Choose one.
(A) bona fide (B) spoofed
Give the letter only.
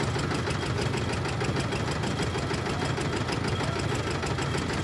A